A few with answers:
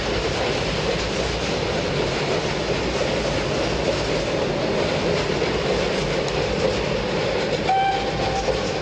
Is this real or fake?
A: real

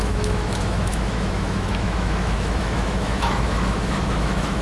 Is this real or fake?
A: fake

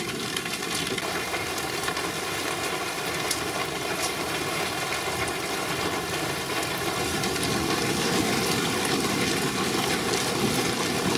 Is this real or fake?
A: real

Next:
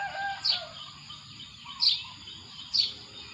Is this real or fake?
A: real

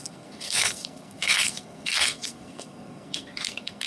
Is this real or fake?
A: fake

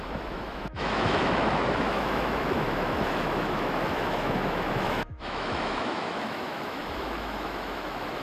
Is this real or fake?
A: fake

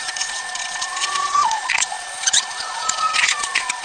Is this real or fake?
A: fake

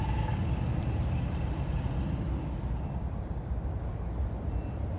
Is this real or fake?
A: real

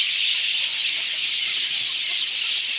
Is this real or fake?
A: real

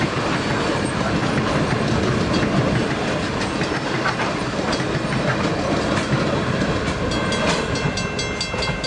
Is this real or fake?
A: real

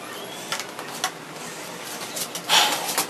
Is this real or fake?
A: real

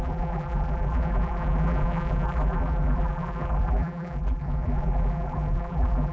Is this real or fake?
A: fake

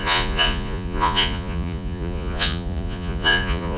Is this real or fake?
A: fake